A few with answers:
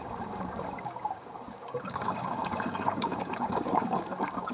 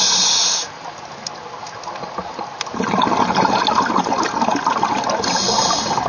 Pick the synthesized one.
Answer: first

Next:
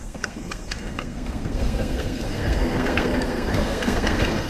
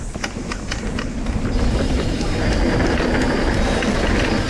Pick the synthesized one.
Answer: first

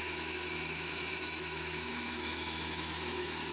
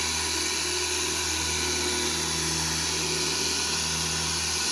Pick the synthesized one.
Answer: first